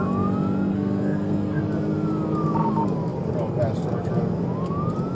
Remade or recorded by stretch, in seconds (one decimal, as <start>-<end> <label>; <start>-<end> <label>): 0.0-0.7 recorded; 0.7-1.6 remade; 1.6-5.1 recorded